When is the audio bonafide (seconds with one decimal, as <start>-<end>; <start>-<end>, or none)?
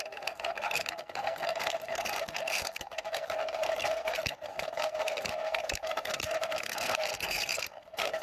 none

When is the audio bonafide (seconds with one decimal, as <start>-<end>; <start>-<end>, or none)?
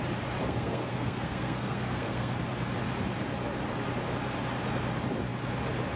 0.0-0.4; 2.3-6.0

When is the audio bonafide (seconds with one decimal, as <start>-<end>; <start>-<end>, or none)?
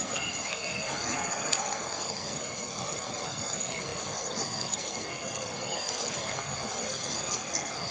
none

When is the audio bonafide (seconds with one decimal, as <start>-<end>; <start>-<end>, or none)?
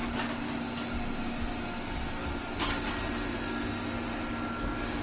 0.0-5.0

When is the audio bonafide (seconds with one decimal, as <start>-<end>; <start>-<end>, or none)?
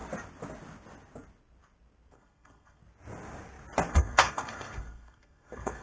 0.0-2.1; 2.8-3.9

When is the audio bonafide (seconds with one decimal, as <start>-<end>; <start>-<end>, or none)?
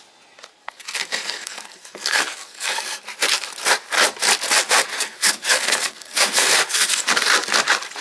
0.0-0.5; 3.0-4.9; 7.1-8.0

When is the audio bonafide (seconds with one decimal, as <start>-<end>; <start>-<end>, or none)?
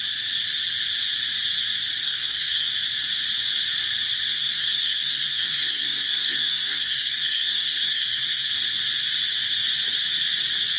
0.0-2.0; 2.7-4.3; 8.5-10.8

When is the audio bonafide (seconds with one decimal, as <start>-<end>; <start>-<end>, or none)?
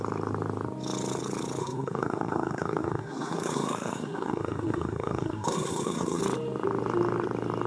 0.0-1.6; 6.2-7.7